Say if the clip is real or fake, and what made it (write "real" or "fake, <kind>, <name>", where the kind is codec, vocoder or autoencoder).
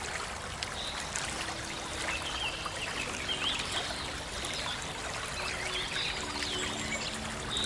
real